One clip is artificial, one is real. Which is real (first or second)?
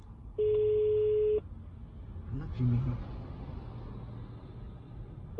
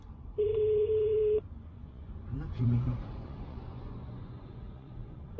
first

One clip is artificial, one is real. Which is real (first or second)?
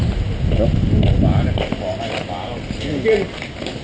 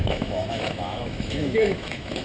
first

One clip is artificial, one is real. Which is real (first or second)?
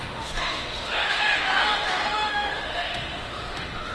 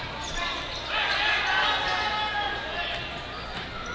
second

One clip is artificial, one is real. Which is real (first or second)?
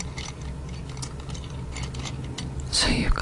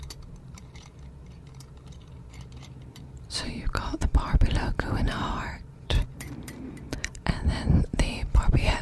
first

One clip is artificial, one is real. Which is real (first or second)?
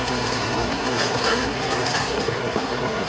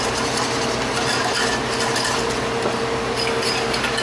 second